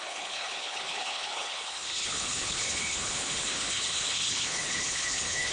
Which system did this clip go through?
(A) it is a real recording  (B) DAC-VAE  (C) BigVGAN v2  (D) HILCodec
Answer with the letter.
D